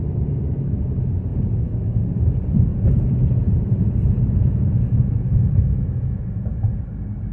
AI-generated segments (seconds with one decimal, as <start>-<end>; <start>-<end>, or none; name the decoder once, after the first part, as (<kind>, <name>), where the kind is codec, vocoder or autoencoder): 1.3-2.0 (vocoder, Vocos); 2.7-6.5